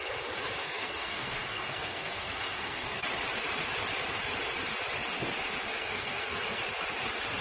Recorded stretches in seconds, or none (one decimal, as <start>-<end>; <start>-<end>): 0.0-0.6; 3.0-5.7; 6.6-7.4